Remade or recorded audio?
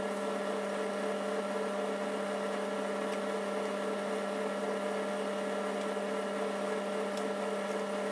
recorded